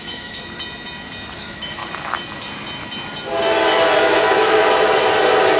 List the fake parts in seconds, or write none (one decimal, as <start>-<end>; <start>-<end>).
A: 0.0-0.4; 1.4-1.8; 4.0-4.6

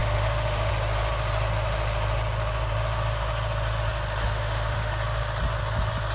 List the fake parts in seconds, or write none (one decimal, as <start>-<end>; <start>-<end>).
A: 0.0-0.7; 4.2-4.9

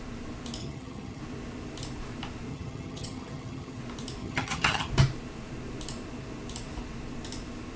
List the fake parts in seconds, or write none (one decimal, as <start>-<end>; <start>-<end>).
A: 0.6-1.2; 2.5-3.8; 4.2-4.9